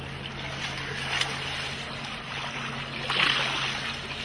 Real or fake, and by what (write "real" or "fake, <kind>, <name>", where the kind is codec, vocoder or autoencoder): real